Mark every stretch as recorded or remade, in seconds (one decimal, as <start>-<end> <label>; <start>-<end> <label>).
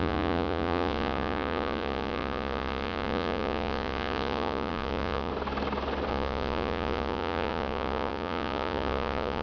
0.0-5.3 remade; 5.3-6.1 recorded; 6.1-9.4 remade